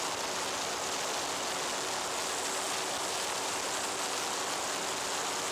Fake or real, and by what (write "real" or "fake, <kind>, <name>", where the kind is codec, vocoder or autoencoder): real